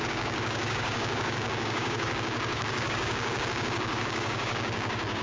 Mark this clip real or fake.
fake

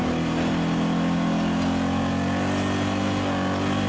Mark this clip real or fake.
real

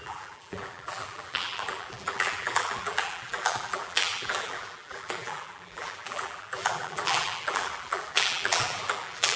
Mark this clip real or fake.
fake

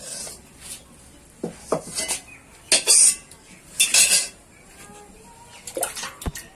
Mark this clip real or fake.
real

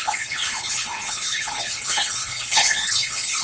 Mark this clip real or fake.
fake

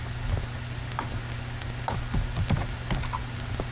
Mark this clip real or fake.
real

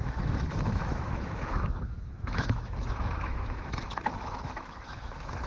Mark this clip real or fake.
fake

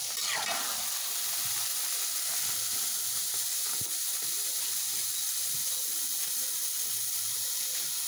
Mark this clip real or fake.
real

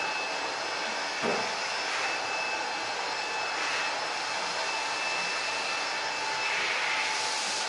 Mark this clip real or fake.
real